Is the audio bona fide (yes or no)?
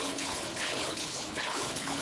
no